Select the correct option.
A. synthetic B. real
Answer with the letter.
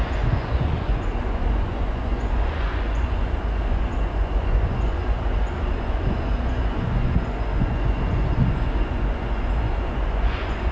A